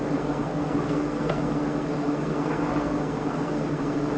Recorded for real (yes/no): no